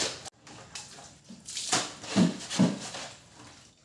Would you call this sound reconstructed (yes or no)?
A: no